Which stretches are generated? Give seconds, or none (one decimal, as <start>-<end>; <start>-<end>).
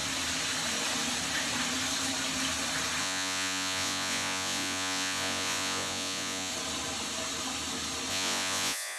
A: 3.0-6.5; 8.1-9.0